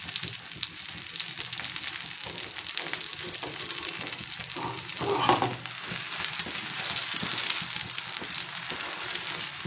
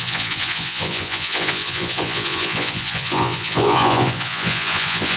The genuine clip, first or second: first